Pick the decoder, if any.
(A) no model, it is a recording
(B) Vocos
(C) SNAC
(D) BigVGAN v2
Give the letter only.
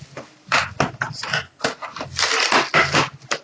A